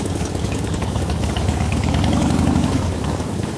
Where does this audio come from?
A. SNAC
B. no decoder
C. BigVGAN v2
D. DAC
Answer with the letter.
D